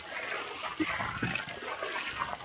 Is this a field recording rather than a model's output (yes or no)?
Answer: yes